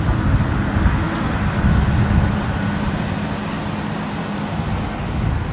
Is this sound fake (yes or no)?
no